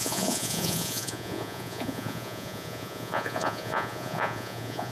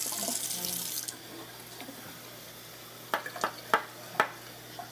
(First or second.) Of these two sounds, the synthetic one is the first